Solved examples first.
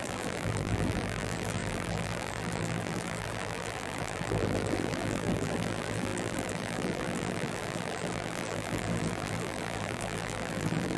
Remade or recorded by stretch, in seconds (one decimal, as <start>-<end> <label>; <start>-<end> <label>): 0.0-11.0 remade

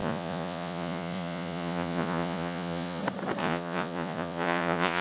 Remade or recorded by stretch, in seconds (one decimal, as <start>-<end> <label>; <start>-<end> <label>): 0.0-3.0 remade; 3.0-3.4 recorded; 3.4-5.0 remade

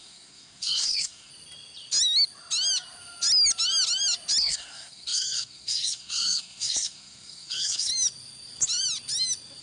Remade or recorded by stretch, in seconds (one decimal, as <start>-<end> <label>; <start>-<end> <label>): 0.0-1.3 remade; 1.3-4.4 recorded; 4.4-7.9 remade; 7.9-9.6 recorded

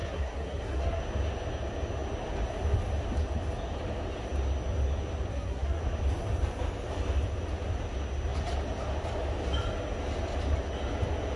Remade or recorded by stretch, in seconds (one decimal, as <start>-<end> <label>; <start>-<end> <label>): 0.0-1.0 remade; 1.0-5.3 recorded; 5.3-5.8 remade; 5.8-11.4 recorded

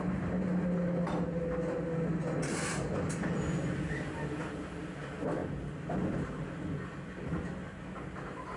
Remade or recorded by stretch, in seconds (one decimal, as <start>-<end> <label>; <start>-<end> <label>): 0.0-8.6 recorded